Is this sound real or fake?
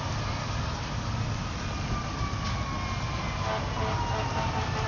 real